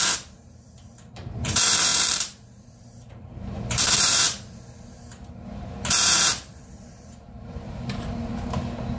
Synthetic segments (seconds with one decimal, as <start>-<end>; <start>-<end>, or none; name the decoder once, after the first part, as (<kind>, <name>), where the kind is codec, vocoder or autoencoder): 0.0-8.3 (vocoder, BigVGAN v2)